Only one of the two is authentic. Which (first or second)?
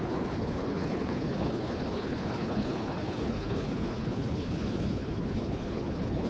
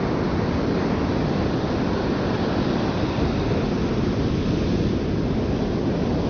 second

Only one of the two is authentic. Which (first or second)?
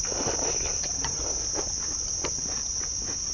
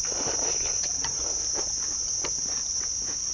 second